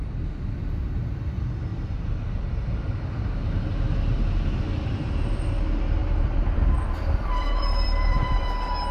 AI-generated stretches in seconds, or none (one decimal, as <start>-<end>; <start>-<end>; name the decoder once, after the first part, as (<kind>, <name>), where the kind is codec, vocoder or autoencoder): 0.0-0.7 (vocoder, BigVGAN v2); 1.7-2.5; 6.0-8.4